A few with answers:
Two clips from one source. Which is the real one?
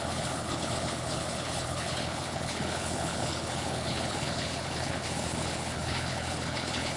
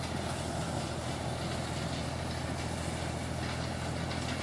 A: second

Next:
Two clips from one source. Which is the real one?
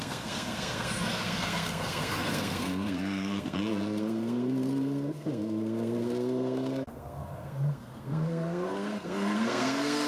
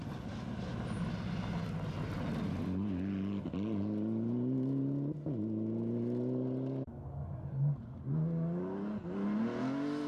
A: second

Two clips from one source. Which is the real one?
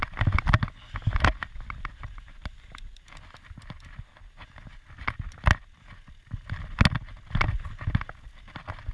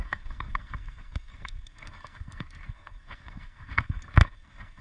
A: first